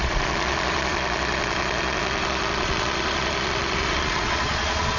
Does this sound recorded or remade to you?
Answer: remade